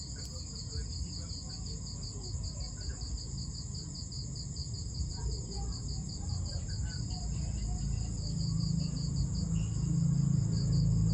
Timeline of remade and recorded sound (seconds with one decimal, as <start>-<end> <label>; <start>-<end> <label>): 0.0-4.6 recorded; 4.6-9.2 remade; 9.2-11.1 recorded